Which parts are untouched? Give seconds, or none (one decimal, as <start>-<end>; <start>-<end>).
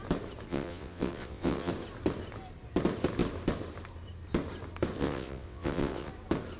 0.0-0.5; 1.7-5.0; 6.1-6.6